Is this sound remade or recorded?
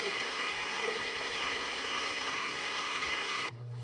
remade